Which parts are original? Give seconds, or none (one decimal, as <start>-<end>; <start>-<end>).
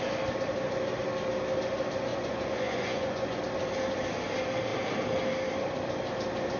0.0-2.1; 3.4-6.6